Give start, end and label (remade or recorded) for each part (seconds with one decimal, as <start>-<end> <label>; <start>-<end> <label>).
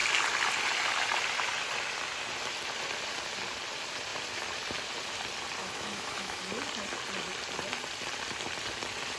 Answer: 0.0-5.6 recorded; 5.6-6.4 remade; 6.4-9.2 recorded